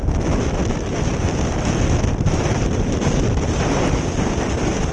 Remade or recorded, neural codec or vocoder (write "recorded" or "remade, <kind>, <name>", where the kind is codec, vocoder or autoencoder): recorded